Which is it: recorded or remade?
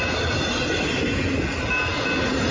recorded